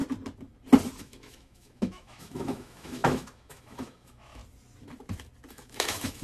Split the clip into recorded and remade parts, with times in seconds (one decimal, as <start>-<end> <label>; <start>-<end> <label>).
0.0-1.0 recorded; 1.0-4.4 remade; 4.4-5.5 recorded; 5.5-6.2 remade